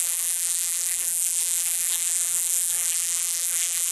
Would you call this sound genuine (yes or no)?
no